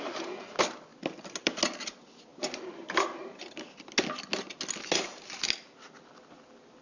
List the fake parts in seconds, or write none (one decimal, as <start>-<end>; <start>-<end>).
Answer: none